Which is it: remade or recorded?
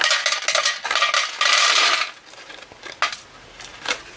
recorded